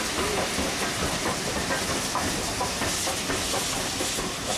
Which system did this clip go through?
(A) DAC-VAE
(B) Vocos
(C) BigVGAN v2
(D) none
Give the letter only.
D